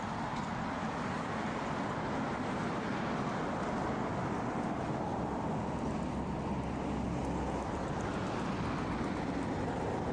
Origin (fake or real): real